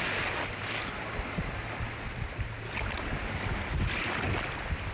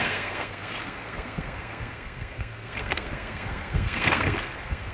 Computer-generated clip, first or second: second